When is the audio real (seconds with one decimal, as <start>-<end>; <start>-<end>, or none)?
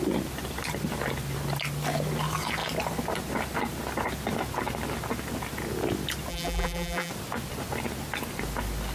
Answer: 0.0-6.3; 7.1-8.9